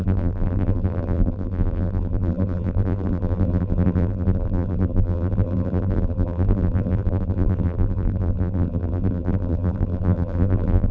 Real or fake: fake